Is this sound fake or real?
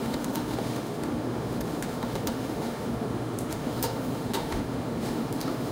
fake